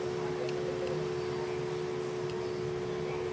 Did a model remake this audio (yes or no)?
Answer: no